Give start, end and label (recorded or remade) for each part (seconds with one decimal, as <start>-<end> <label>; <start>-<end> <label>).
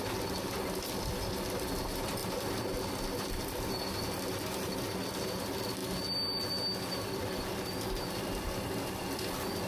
0.0-9.7 recorded